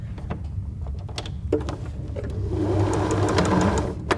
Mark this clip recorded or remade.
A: recorded